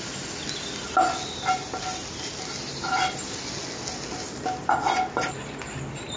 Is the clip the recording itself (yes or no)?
yes